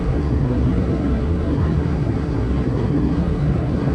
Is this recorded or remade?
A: remade